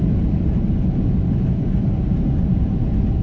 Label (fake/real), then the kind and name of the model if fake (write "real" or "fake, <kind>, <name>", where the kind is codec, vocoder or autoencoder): fake, vocoder, BigVGAN v2